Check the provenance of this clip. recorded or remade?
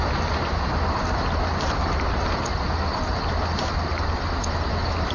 recorded